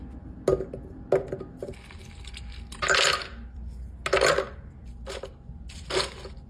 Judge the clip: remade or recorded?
recorded